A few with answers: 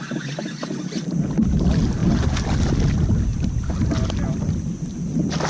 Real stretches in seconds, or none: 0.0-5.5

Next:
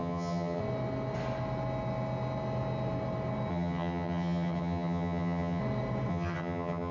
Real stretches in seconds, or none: 0.6-3.5; 5.6-6.1

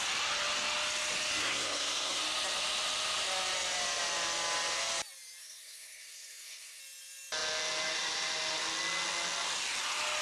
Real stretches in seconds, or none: 0.0-1.4; 2.2-5.4; 6.8-10.2

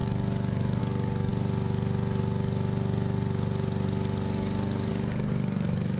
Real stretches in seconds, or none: 1.3-4.9

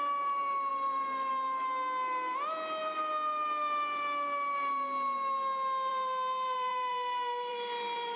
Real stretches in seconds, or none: 0.0-0.7; 1.3-5.9

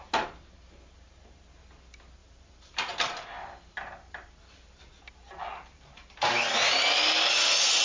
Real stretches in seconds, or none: 0.0-2.2; 4.8-5.7; 6.3-7.8

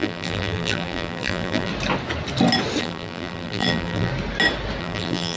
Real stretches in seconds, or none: 1.7-2.8; 4.1-4.8

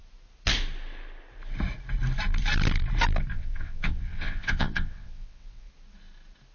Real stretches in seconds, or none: 0.0-3.3; 5.7-6.5